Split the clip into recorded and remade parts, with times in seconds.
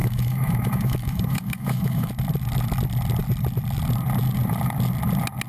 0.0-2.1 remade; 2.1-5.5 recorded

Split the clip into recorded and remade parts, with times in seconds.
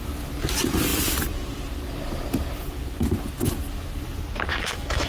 0.0-4.5 recorded; 4.5-5.1 remade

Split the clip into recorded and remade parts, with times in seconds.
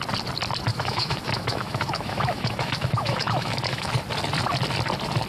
0.0-0.7 recorded; 0.7-3.9 remade; 3.9-5.3 recorded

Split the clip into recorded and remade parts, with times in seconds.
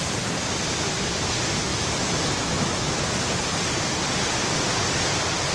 0.0-1.7 recorded; 1.7-2.9 remade; 2.9-5.5 recorded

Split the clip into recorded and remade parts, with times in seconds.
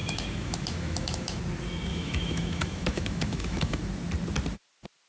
0.0-1.4 remade; 1.4-1.9 recorded; 1.9-3.8 remade; 3.8-5.1 recorded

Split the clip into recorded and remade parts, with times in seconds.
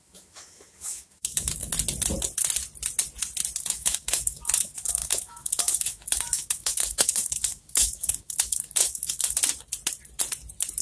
0.0-1.7 remade; 1.7-3.6 recorded; 3.6-9.4 remade; 9.4-10.8 recorded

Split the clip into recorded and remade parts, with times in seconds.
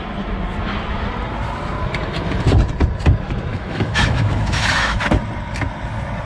0.0-3.5 recorded; 3.5-5.0 remade; 5.0-6.3 recorded